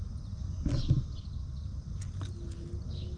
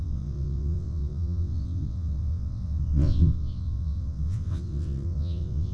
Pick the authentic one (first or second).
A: first